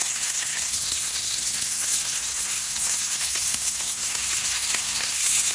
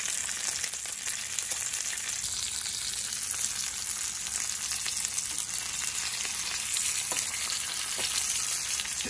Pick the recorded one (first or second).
second